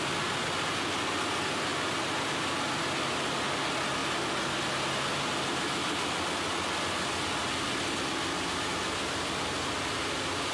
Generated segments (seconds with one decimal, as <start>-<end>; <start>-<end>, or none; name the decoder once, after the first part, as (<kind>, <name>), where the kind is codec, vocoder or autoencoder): none